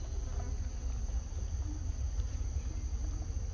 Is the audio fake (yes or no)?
no